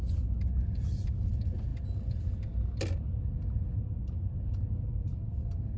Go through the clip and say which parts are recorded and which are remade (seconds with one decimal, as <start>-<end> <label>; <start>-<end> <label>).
0.0-5.8 recorded